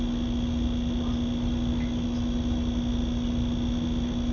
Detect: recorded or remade recorded